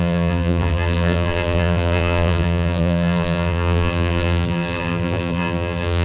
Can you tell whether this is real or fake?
fake